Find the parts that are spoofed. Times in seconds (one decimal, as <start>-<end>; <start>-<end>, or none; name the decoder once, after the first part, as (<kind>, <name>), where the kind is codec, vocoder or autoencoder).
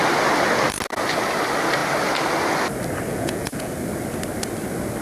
3.1-3.7 (vocoder, Vocos)